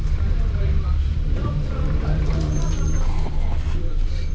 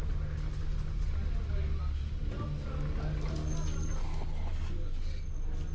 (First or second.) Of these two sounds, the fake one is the first